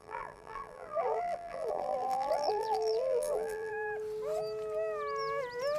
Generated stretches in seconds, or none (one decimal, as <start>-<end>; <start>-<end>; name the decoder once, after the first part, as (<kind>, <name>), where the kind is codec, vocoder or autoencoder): 0.0-3.7 (vocoder, BigVGAN v2)